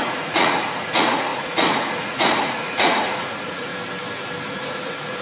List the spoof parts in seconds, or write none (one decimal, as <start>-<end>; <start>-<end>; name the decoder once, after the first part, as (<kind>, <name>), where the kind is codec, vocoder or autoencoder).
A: 0.0-3.7 (vocoder, Vocos); 4.5-5.2